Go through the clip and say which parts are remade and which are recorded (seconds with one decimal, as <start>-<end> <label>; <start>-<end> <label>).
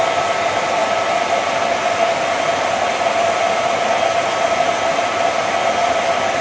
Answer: 0.0-6.4 recorded